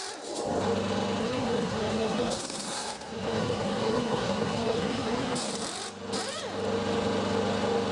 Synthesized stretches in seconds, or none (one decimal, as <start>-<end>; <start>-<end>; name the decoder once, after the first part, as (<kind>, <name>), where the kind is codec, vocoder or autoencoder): 1.2-5.5 (codec, SNAC)